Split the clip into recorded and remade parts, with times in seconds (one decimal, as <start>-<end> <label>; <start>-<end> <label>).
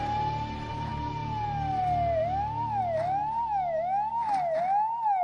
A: 0.0-5.2 recorded